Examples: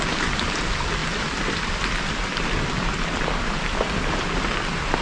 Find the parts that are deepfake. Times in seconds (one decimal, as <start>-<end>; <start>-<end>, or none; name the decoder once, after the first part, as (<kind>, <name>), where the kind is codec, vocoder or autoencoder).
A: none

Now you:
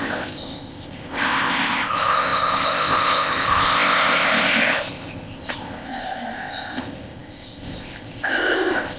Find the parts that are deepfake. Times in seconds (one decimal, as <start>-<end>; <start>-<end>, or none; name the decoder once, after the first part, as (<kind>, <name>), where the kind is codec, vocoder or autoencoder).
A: 0.0-9.0 (codec, ZipCodec)

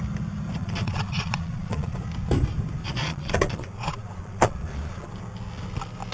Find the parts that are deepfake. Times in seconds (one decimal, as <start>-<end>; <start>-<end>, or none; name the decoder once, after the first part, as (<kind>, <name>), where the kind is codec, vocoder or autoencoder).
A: 0.6-2.0 (vocoder, Vocos); 2.8-5.1

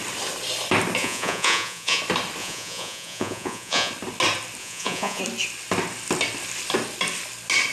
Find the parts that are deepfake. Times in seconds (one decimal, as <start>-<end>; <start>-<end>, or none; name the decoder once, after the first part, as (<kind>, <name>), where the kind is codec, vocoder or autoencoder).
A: 1.0-2.0 (vocoder, Vocos); 2.4-3.9; 4.6-5.2

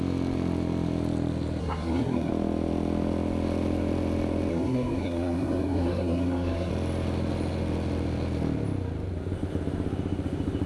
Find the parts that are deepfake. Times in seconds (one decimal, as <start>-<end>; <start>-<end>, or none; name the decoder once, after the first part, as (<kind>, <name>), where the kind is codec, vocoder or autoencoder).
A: 1.6-2.3 (codec, SNAC); 4.5-6.7

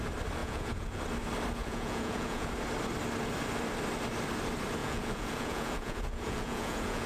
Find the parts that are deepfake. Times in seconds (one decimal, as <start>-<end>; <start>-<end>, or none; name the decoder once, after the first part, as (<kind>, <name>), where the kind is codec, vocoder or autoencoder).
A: 0.4-1.0 (vocoder, Vocos); 1.6-2.5; 4.8-7.1

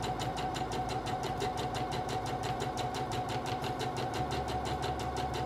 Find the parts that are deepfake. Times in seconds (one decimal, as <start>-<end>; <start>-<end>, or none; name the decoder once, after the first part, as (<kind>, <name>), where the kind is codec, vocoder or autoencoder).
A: 0.5-3.8 (vocoder, BigVGAN v2)